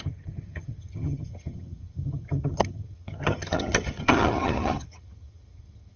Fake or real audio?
fake